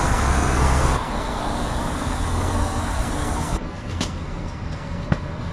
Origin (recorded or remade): remade